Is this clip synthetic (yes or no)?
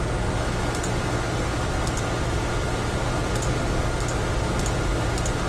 no